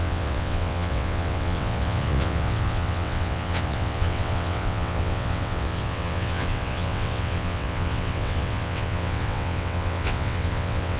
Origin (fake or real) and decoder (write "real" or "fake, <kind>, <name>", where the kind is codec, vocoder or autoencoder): fake, vocoder, WaveNeXt